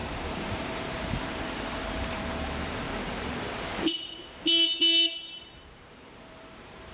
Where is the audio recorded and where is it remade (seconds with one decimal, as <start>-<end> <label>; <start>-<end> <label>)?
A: 0.0-6.9 remade